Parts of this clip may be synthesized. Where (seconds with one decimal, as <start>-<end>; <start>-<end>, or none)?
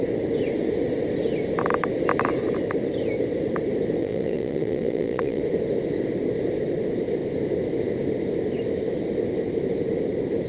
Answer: 4.0-5.4